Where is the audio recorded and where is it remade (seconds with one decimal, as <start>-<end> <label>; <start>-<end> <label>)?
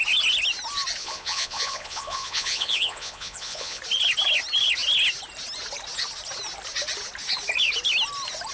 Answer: 0.0-1.0 recorded; 1.0-3.8 remade; 3.8-8.5 recorded